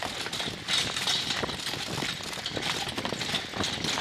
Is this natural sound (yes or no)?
yes